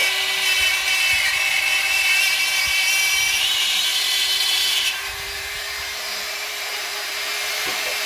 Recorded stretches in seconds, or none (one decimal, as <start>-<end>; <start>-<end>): 0.0-3.2